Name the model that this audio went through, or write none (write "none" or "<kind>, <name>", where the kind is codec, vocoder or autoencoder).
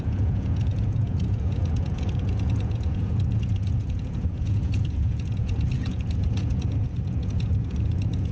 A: vocoder, Vocos